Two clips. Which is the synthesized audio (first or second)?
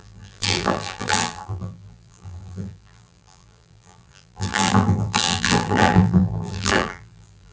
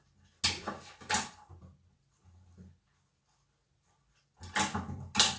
first